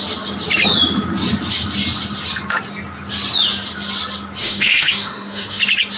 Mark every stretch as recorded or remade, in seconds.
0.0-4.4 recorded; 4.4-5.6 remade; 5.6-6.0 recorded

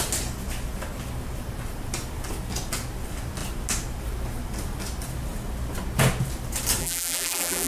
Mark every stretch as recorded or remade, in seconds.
0.0-6.8 recorded; 6.8-7.7 remade

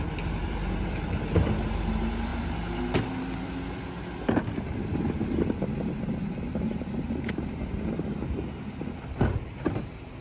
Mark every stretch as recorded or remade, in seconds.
0.0-10.2 recorded

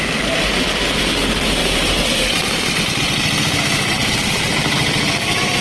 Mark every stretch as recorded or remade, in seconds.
0.0-1.6 recorded; 1.6-3.0 remade; 3.0-4.0 recorded; 4.0-4.8 remade; 4.8-5.6 recorded

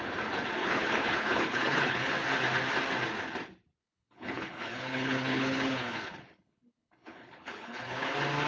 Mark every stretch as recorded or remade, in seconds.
0.0-0.6 recorded; 0.6-2.1 remade; 2.1-3.8 recorded; 3.8-8.1 remade; 8.1-8.5 recorded

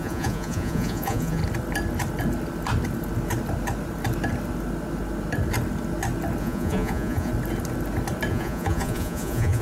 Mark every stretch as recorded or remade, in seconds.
0.0-1.4 remade; 1.4-6.4 recorded; 6.4-7.3 remade; 7.3-8.3 recorded; 8.3-9.6 remade

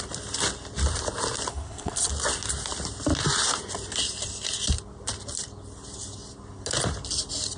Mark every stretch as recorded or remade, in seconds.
0.0-1.5 recorded; 1.5-2.1 remade; 2.1-7.6 recorded

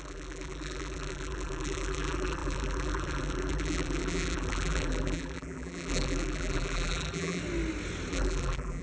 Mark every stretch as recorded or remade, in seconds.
0.0-7.4 remade; 7.4-8.1 recorded; 8.1-8.8 remade